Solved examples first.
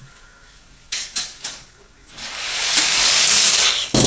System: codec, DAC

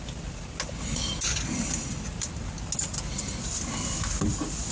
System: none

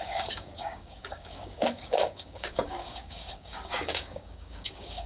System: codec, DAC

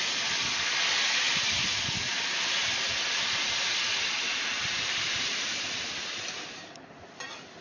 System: none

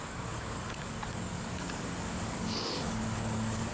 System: codec, DAC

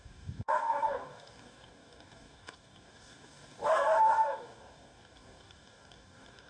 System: codec, DAC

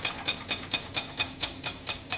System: codec, DAC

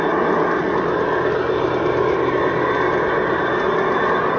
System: none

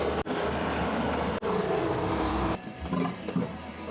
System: none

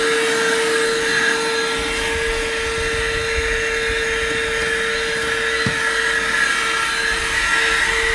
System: none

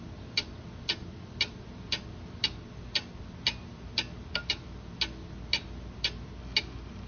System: none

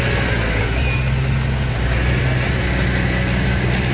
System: none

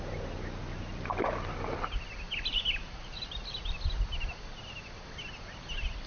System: none